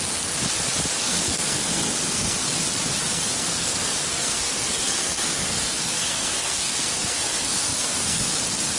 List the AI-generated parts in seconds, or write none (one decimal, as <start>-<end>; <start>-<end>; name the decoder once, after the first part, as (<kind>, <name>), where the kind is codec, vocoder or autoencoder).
1.0-2.5 (codec, SNAC); 3.1-8.4

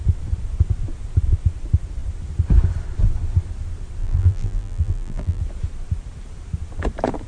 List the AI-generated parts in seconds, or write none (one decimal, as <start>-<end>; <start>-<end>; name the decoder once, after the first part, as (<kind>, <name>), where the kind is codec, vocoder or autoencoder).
4.0-5.4 (vocoder, BigVGAN v2)

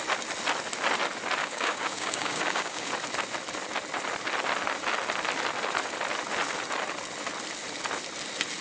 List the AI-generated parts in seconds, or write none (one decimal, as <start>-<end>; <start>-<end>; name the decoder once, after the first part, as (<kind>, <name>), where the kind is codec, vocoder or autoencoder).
1.4-2.9 (codec, DAC)

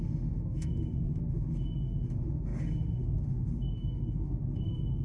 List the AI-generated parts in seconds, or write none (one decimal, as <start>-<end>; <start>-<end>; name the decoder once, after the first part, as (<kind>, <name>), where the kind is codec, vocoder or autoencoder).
0.0-5.0 (autoencoder, DAC-VAE)

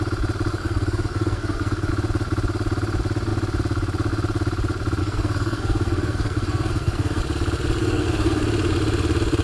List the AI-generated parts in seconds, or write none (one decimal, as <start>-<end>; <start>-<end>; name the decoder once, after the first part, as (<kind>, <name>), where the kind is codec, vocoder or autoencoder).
0.5-1.9 (codec, SNAC); 5.0-7.2; 7.8-8.4